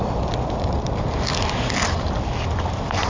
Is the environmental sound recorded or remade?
recorded